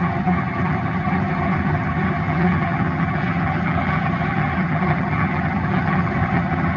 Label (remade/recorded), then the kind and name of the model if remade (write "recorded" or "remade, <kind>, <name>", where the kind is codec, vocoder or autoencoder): remade, vocoder, HiFi-GAN